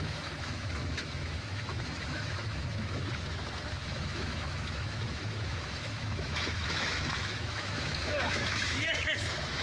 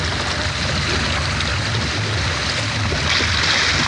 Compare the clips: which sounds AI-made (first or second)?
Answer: first